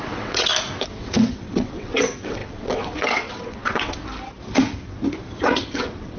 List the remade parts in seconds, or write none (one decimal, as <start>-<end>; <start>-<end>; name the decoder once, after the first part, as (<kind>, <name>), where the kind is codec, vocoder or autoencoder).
0.0-0.5 (vocoder, WaveNeXt); 1.0-4.0; 5.4-6.2